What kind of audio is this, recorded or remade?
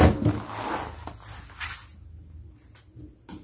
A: recorded